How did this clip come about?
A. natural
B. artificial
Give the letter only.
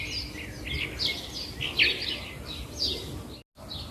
A